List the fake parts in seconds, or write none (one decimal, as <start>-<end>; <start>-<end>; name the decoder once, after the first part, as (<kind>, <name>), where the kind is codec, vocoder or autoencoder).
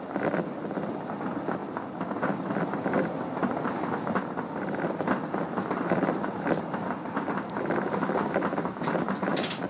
none